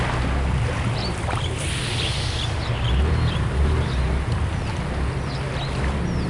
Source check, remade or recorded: recorded